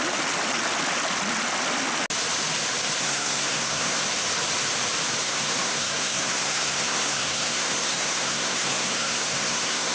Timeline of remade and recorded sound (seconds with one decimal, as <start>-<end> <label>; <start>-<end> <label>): 0.0-3.0 recorded; 3.0-4.0 remade; 4.0-5.2 recorded; 5.2-9.9 remade